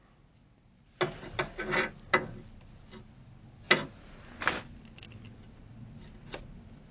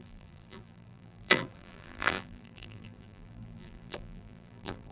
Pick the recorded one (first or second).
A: first